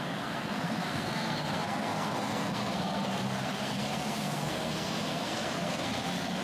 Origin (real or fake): fake